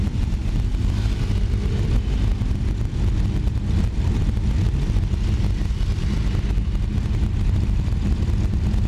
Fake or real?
real